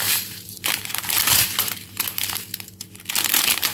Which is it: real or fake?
fake